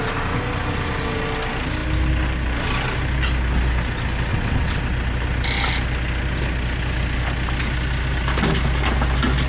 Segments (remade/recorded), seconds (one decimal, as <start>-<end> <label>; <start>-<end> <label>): 0.0-4.3 recorded; 4.3-4.8 remade; 4.8-9.5 recorded